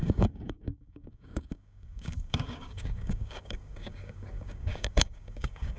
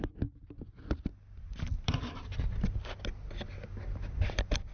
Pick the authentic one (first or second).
second